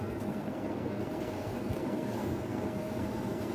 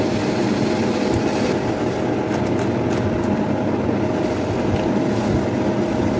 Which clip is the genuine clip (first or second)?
second